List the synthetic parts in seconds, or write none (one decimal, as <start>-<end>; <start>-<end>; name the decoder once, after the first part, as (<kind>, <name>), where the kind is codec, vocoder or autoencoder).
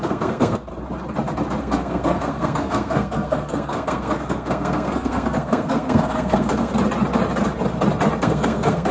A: 0.0-0.7 (codec, SNAC); 1.6-6.7; 8.2-8.9